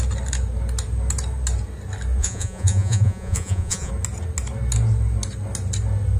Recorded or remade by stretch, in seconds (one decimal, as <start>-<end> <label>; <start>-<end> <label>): 0.0-2.2 recorded; 2.2-3.9 remade; 3.9-6.2 recorded